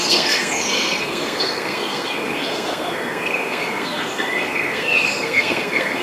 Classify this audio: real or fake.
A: fake